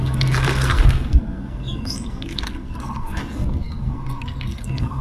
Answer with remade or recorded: remade